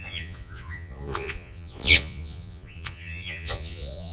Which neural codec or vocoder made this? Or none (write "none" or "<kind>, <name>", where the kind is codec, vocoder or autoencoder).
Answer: vocoder, Vocos